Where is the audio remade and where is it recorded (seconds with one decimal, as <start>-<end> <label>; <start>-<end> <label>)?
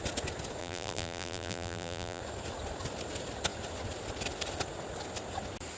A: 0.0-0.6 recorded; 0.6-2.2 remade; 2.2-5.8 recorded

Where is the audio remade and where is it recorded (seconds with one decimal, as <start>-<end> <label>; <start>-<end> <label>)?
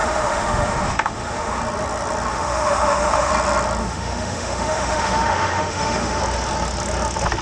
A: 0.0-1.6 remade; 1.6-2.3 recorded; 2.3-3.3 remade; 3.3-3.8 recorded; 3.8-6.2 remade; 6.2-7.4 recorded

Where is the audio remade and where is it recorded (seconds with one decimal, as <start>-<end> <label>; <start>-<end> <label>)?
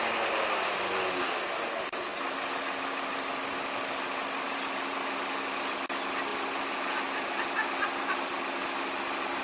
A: 0.0-9.4 recorded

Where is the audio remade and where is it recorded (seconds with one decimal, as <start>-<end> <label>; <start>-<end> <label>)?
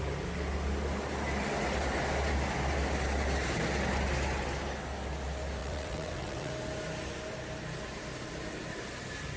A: 0.0-5.6 recorded; 5.6-6.5 remade; 6.5-9.4 recorded